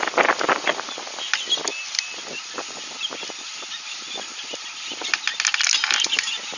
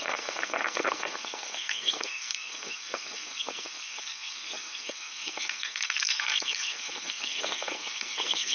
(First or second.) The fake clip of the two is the second